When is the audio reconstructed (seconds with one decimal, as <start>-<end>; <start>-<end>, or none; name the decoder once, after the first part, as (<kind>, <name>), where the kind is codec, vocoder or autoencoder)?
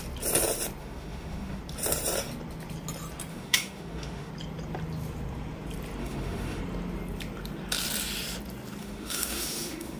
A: 0.8-1.6 (autoencoder, DAC-VAE); 3.3-4.3; 6.0-6.6; 8.8-10.0